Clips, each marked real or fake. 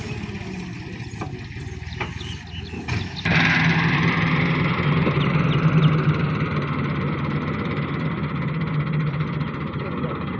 real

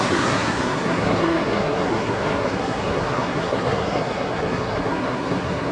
fake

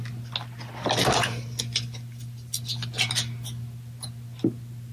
real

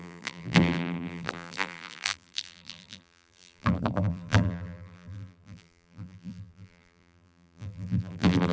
fake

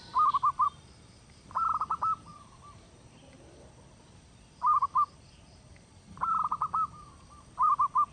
fake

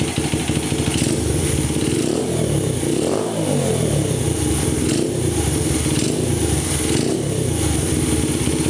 real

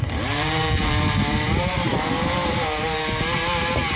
fake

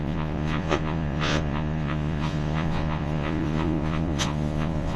fake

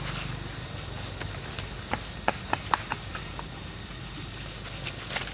real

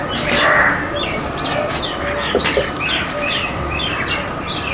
real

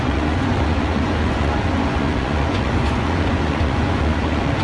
fake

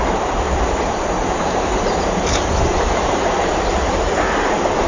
fake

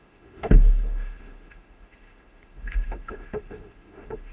fake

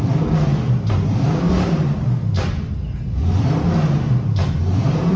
real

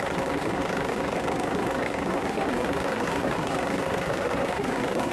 fake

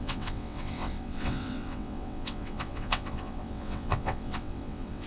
fake